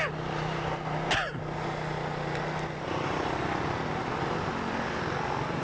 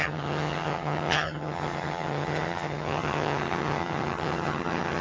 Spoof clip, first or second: second